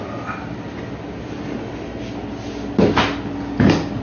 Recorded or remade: recorded